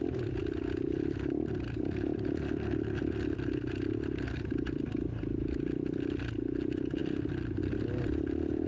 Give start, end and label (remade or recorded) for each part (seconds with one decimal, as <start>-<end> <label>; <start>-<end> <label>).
0.0-8.7 recorded